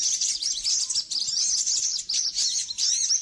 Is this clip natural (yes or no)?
yes